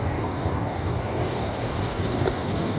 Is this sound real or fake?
fake